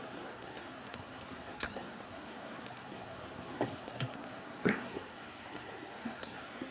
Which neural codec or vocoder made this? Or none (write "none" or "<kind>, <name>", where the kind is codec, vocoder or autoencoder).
codec, SNAC